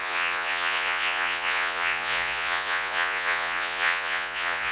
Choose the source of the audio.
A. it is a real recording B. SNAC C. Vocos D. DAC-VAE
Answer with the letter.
C